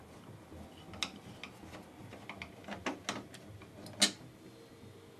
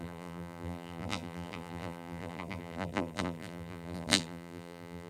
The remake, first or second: second